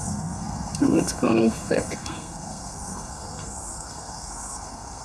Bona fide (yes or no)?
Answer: no